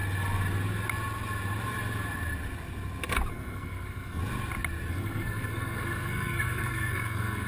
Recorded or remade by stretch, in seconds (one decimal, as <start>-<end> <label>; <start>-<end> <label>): 0.0-3.3 recorded; 3.3-4.2 remade; 4.2-4.9 recorded; 4.9-7.5 remade